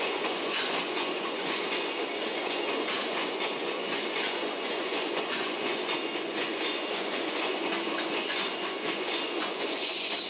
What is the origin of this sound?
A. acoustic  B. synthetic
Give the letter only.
B